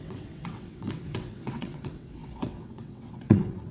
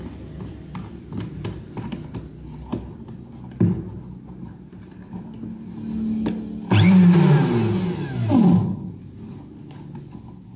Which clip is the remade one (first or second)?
first